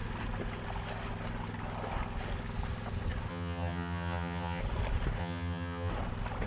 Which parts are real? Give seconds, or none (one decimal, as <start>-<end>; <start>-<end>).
0.0-3.3; 4.6-5.2; 5.9-6.5